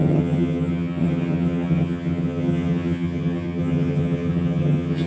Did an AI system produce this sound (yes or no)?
yes